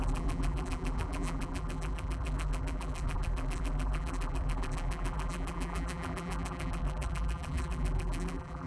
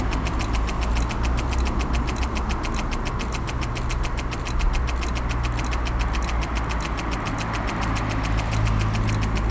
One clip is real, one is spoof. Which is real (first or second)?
second